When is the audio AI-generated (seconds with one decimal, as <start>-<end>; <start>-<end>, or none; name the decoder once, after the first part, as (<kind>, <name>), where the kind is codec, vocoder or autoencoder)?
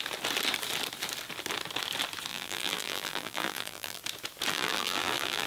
2.3-4.0 (vocoder, BigVGAN v2); 4.5-5.5